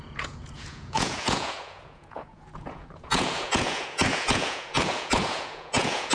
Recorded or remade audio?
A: remade